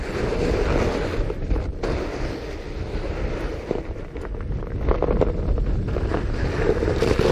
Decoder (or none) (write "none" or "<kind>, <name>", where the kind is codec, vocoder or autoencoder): none